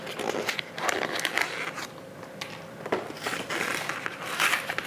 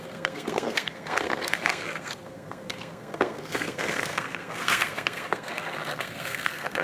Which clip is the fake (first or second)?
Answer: second